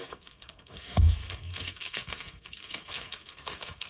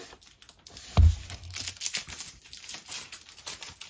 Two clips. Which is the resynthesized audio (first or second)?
first